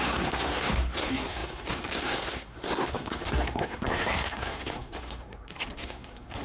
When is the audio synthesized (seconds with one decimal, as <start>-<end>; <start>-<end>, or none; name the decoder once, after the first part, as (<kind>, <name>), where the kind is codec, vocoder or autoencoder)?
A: 0.0-6.4 (codec, SNAC)